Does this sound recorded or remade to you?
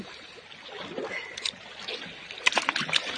recorded